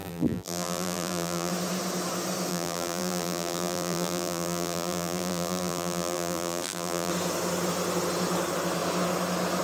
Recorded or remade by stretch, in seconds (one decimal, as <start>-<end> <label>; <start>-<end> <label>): 0.0-1.5 remade; 1.5-2.5 recorded; 2.5-7.1 remade; 7.1-9.6 recorded